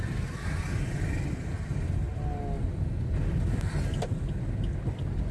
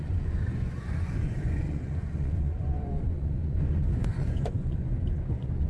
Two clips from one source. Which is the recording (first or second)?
first